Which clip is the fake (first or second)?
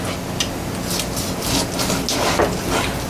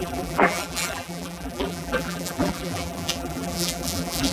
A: second